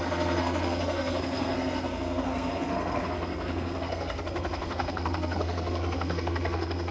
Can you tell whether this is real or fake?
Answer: fake